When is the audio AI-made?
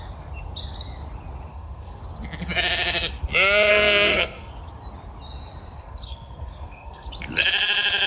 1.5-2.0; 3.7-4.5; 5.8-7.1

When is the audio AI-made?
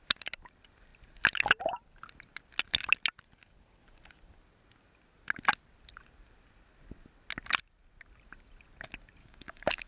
9.2-9.9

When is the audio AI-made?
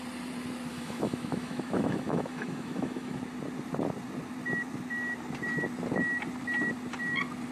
0.7-3.2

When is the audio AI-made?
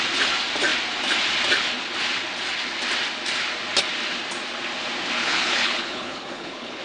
5.2-6.8